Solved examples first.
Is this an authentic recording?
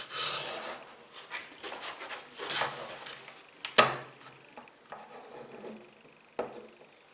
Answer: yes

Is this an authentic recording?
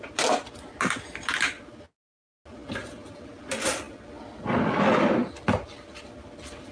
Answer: yes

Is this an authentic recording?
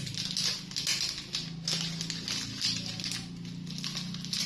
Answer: yes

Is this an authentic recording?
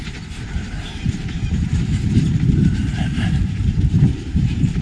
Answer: no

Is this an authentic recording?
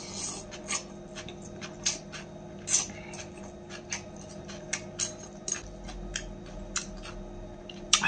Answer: yes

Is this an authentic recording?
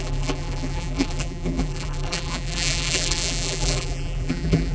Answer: no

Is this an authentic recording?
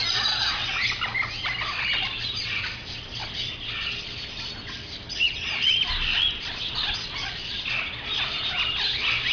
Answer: yes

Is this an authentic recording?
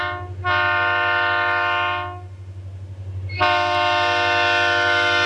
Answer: yes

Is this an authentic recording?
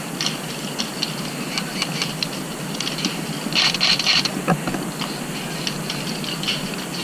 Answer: yes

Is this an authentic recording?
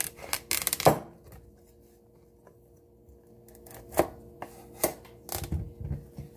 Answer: yes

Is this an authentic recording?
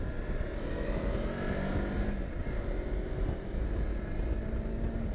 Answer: yes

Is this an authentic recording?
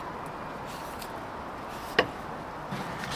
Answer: yes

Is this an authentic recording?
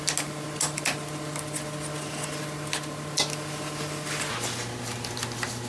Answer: yes